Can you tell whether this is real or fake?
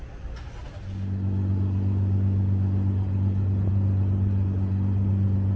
real